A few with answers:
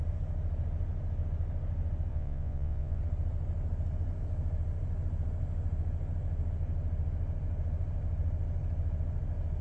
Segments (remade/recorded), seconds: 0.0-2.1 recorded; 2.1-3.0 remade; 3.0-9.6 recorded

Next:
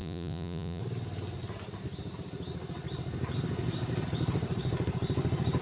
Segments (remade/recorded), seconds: 0.0-0.8 remade; 0.8-5.6 recorded

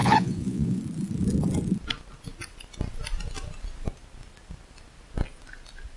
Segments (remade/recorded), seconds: 0.0-0.8 remade; 0.8-6.0 recorded

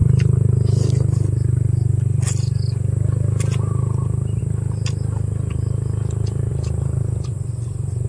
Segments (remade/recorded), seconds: 0.0-8.1 recorded

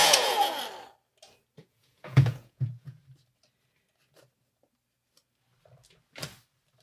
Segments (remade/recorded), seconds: 0.0-0.6 remade; 0.6-1.6 recorded; 1.6-3.0 remade; 3.0-6.8 recorded

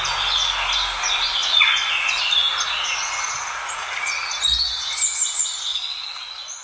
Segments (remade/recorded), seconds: 0.0-1.4 recorded; 1.4-2.2 remade; 2.2-3.8 recorded; 3.8-4.3 remade; 4.3-5.7 recorded; 5.7-6.6 remade

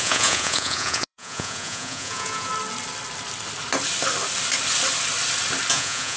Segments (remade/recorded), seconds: 0.0-2.5 remade; 2.5-5.7 recorded; 5.7-6.2 remade

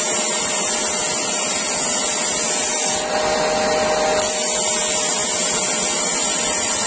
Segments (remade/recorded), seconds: 0.0-6.9 recorded